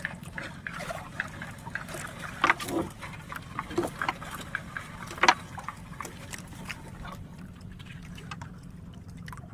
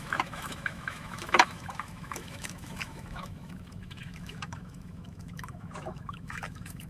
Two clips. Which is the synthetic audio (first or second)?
second